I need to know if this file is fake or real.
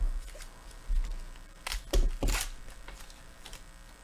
real